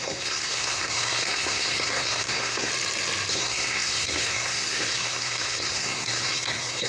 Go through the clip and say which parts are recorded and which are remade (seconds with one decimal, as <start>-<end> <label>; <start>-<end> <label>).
0.0-2.7 remade; 2.7-3.3 recorded; 3.3-6.9 remade